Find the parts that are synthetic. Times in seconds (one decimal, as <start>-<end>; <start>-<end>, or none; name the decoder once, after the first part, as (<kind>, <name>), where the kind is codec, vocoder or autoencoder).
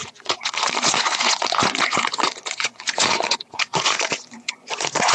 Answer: 0.0-5.1 (vocoder, Vocos)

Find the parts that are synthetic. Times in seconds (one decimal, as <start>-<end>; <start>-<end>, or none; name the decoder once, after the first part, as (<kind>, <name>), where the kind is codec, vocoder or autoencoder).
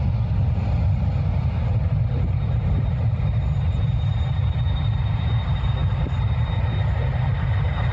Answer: none